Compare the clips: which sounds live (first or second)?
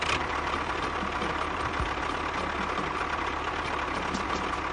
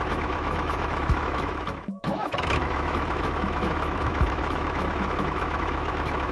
first